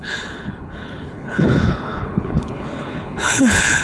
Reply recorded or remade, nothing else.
remade